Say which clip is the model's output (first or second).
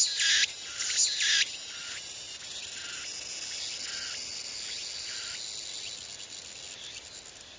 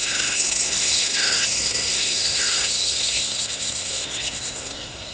second